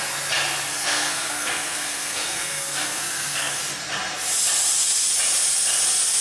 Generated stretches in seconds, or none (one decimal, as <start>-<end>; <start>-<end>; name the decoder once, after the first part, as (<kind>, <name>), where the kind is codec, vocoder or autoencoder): 0.7-3.6 (codec, SNAC)